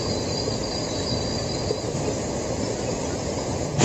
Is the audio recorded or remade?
recorded